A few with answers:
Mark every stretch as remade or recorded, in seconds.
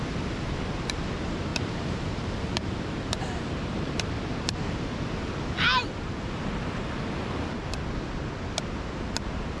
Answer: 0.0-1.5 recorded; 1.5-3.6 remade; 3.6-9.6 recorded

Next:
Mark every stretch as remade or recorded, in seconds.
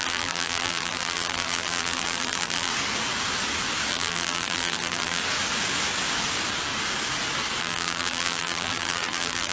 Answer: 0.0-2.7 remade; 2.7-3.9 recorded; 3.9-5.2 remade; 5.2-7.6 recorded; 7.6-9.5 remade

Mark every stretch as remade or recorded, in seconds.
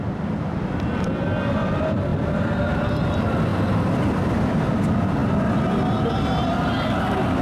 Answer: 0.0-2.1 recorded; 2.1-2.9 remade; 2.9-7.4 recorded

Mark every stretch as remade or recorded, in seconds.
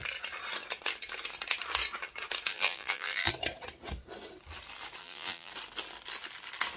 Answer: 0.0-2.5 recorded; 2.5-3.3 remade; 3.3-5.0 recorded; 5.0-5.5 remade; 5.5-6.8 recorded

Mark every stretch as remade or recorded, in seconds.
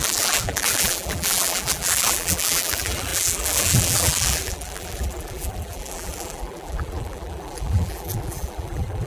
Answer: 0.0-9.1 remade